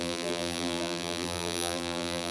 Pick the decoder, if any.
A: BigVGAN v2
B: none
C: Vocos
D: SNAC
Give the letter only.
A